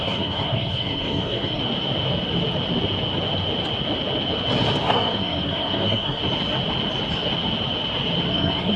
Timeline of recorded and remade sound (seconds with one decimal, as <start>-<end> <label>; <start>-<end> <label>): 0.0-1.6 remade; 1.6-4.8 recorded; 4.8-6.2 remade; 6.2-8.3 recorded; 8.3-8.8 remade